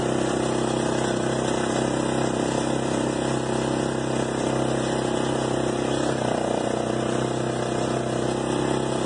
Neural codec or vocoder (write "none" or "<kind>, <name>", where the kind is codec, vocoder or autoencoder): none